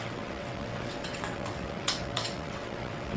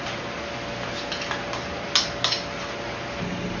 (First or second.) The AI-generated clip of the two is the first